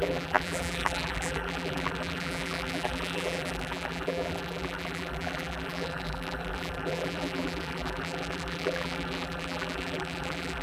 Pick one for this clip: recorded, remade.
remade